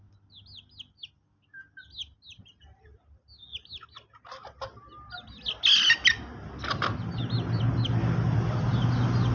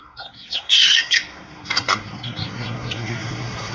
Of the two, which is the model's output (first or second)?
second